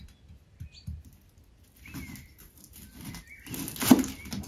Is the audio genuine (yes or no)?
yes